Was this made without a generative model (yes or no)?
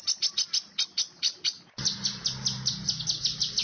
yes